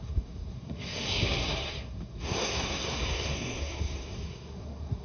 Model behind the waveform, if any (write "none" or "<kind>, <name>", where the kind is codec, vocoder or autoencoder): codec, SNAC